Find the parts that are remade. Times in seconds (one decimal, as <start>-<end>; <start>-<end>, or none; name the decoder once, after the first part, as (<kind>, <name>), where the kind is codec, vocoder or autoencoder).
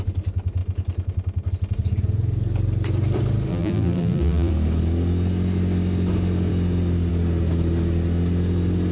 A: 3.5-4.5 (vocoder, BigVGAN v2)